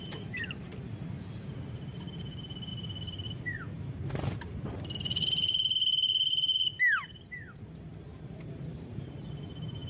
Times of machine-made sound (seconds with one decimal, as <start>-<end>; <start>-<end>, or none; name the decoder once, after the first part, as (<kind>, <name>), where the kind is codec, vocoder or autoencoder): none